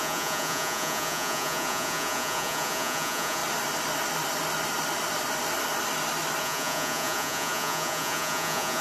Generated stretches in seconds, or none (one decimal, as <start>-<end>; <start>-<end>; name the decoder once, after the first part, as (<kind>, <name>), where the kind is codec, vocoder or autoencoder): 0.0-3.4 (vocoder, Vocos); 6.4-8.8

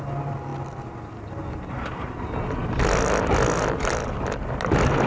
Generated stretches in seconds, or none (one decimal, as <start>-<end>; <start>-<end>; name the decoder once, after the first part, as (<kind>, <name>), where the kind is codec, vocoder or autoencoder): none

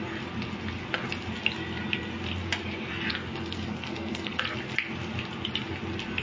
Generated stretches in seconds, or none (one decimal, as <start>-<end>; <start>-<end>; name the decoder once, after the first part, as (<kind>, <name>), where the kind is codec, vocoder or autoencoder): 3.1-4.4 (codec, SNAC)

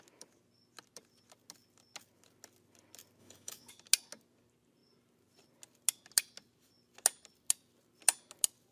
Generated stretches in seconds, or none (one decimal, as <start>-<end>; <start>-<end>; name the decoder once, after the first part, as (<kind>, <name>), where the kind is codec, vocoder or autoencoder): 3.2-3.7 (autoencoder, DAC-VAE)

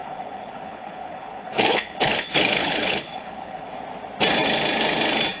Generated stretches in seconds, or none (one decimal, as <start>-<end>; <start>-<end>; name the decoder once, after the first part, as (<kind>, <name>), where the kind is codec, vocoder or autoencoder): 0.0-3.7 (codec, HILCodec)

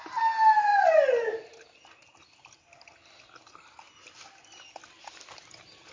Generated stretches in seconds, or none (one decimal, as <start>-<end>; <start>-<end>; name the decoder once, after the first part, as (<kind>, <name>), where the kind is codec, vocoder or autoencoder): none

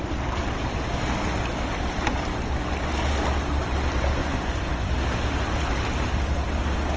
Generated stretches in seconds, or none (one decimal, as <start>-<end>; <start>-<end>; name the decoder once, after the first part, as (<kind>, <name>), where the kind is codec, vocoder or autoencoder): 4.2-4.9 (vocoder, Vocos)

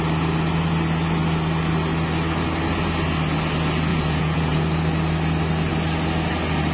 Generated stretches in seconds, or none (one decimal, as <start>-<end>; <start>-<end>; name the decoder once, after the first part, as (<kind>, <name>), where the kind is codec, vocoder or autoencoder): 3.9-4.6 (vocoder, Vocos)